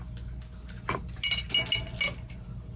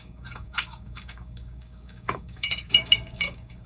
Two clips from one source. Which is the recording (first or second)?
first